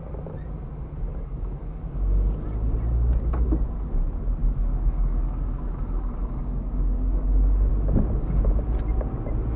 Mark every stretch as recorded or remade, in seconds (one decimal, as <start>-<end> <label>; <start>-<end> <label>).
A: 0.0-1.1 recorded; 1.1-1.8 remade; 1.8-4.4 recorded; 4.4-7.7 remade; 7.7-9.6 recorded